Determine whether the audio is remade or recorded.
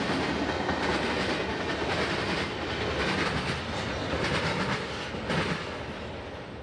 recorded